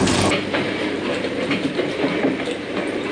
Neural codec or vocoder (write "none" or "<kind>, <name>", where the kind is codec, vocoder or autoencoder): vocoder, BigVGAN v2